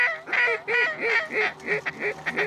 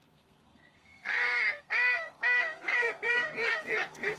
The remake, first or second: second